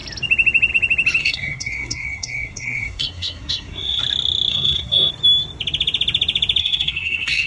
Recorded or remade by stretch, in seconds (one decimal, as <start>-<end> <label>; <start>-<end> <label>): 0.0-1.2 recorded; 1.2-4.0 remade; 4.0-4.5 recorded; 4.5-5.1 remade; 5.1-6.6 recorded; 6.6-7.5 remade